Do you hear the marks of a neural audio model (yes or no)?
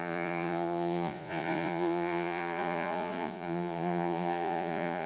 yes